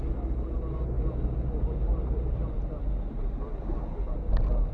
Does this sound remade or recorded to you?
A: recorded